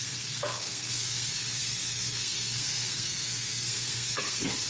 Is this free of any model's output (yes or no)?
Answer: no